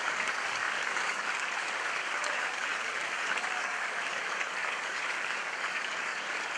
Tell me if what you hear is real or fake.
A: fake